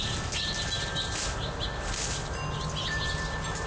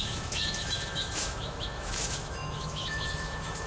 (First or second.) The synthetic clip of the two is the second